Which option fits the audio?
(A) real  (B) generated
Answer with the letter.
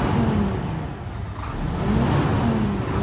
A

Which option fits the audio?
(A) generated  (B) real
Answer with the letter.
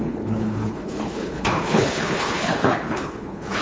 A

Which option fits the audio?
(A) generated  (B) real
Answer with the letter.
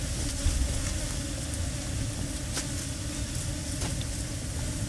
B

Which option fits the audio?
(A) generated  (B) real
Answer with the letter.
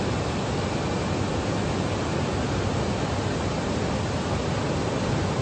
B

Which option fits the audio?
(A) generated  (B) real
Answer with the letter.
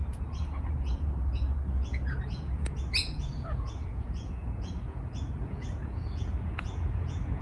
A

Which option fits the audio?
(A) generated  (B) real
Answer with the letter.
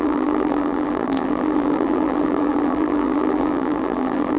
A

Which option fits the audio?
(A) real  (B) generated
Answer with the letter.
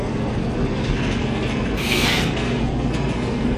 B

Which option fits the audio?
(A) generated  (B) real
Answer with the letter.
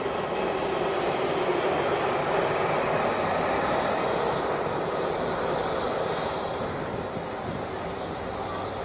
A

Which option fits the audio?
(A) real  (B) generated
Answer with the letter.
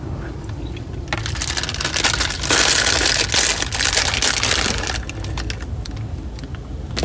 A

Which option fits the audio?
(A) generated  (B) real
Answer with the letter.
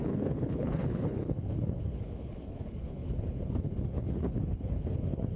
A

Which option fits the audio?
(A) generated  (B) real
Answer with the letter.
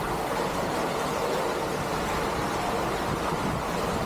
B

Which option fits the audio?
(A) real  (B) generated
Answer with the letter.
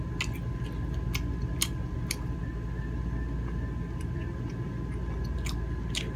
A